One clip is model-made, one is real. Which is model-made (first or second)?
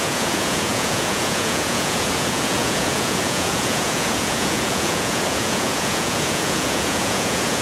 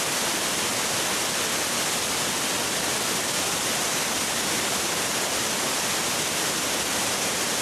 first